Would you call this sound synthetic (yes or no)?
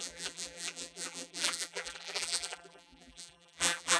yes